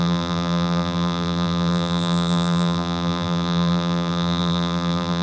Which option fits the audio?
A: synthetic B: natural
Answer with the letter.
A